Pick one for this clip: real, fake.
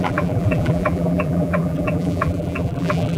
fake